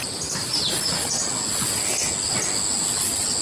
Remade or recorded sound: recorded